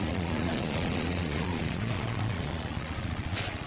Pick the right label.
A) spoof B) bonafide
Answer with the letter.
A